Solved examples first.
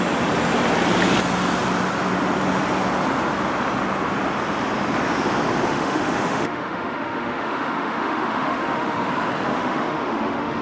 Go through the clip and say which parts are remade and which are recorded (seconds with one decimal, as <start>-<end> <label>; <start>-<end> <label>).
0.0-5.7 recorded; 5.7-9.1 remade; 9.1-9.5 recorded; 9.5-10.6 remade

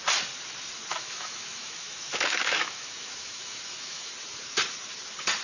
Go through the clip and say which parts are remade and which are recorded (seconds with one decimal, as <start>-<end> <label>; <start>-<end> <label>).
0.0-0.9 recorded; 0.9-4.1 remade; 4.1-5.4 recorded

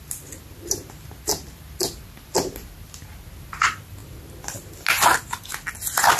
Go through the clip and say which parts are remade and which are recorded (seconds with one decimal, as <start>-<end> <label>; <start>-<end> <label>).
0.0-6.2 recorded

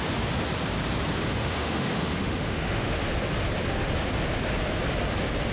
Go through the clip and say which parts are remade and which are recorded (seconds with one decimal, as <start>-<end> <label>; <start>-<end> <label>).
0.0-1.2 recorded; 1.2-3.0 remade; 3.0-5.5 recorded